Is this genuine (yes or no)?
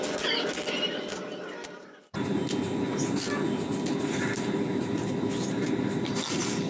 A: yes